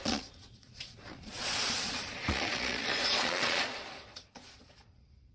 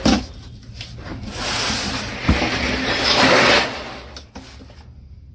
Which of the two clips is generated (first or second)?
first